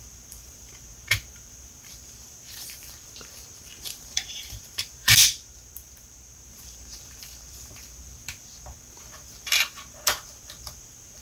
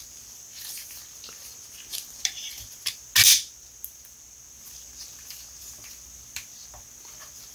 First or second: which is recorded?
second